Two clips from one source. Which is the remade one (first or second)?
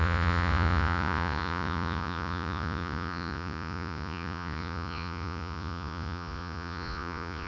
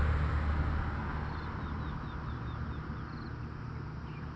first